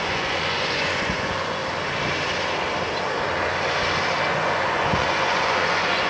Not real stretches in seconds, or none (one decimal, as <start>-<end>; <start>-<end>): 0.0-1.6; 4.3-6.1